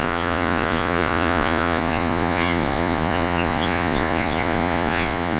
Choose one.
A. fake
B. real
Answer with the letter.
A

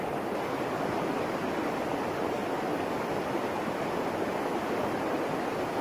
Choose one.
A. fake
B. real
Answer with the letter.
B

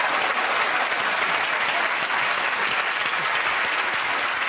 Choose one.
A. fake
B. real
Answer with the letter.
B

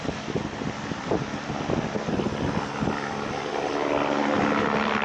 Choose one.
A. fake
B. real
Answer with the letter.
B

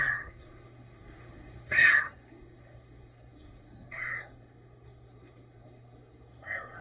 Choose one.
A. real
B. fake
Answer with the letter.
B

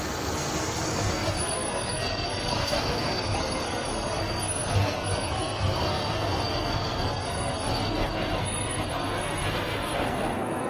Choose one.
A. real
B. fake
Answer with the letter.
B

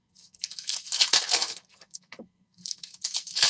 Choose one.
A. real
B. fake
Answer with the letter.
B